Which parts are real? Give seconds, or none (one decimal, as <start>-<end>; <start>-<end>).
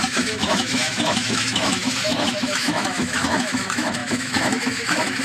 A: none